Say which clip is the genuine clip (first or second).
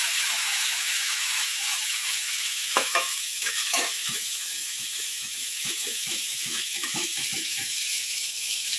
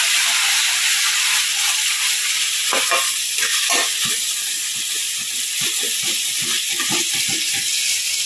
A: second